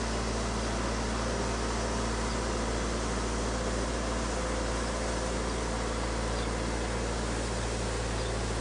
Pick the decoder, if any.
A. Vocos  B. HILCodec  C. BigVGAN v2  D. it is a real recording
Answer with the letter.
D